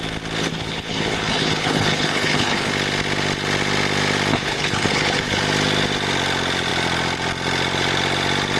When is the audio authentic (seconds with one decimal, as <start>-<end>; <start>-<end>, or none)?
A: 0.0-0.4; 2.7-4.3; 5.4-8.6